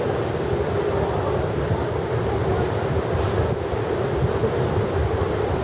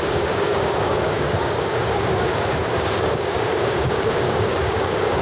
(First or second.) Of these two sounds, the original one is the first